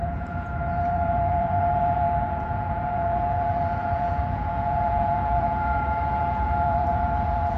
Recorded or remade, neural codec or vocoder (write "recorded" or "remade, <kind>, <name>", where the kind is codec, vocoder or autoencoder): remade, vocoder, Vocos